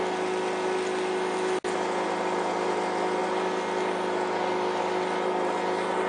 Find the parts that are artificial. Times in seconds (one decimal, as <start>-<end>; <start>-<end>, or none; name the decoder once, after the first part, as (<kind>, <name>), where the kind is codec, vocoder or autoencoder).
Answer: none